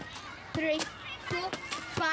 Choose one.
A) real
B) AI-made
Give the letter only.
A